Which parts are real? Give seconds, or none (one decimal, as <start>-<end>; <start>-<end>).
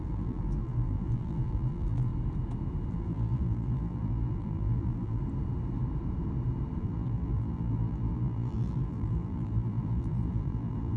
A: 2.1-2.9; 5.2-6.8